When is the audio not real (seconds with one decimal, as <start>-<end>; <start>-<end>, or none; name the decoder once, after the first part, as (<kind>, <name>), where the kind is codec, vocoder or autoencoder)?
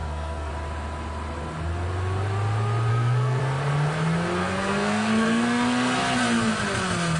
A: 0.0-0.5 (codec, SNAC); 2.9-3.4; 4.4-6.0